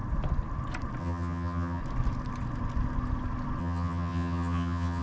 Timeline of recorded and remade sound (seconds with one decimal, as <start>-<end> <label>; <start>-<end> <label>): 0.0-1.0 recorded; 1.0-1.8 remade; 1.8-3.6 recorded; 3.6-5.0 remade

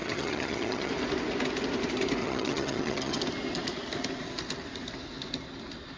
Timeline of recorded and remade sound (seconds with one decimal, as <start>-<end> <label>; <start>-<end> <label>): 0.0-0.9 remade; 0.9-2.2 recorded; 2.2-3.2 remade; 3.2-6.0 recorded

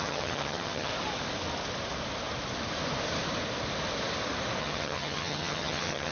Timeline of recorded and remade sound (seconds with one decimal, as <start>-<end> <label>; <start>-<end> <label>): 0.0-0.9 remade; 0.9-4.6 recorded; 4.6-6.1 remade

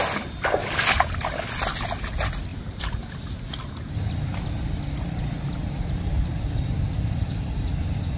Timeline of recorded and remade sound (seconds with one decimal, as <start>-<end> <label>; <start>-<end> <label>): 0.0-8.2 recorded